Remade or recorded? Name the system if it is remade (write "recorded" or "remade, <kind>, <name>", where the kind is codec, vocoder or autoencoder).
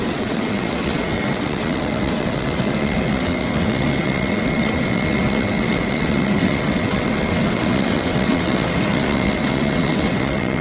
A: remade, vocoder, WaveNeXt